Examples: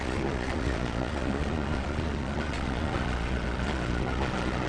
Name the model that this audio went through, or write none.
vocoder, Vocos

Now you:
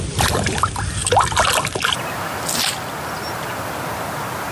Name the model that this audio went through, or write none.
none